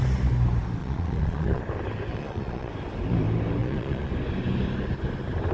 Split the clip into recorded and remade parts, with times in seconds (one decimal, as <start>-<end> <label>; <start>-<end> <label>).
0.0-0.8 recorded; 0.8-1.6 remade; 1.6-2.1 recorded; 2.1-2.7 remade; 2.7-3.6 recorded; 3.6-4.1 remade; 4.1-5.5 recorded